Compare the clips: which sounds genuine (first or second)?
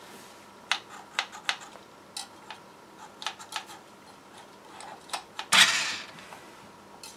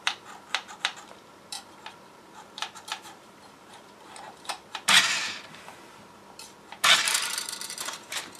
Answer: first